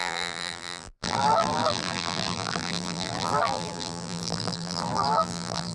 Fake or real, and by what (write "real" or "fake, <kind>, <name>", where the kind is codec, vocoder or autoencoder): fake, vocoder, BigVGAN v2